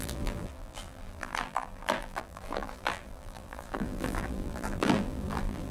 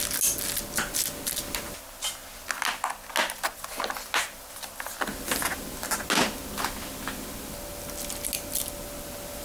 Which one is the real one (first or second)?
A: second